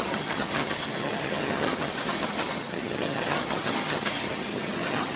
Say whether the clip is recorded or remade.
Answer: remade